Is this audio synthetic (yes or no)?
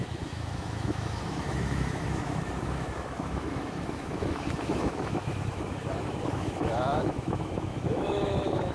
yes